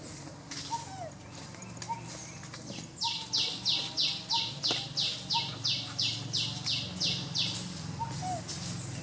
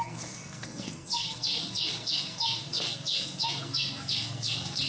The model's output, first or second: second